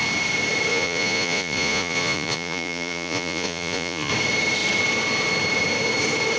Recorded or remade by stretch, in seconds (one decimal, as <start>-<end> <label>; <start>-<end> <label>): 0.0-0.7 recorded; 0.7-4.1 remade; 4.1-6.4 recorded